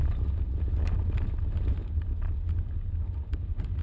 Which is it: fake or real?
real